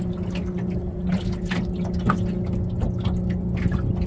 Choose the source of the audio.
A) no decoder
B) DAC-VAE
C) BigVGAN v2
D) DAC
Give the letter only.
A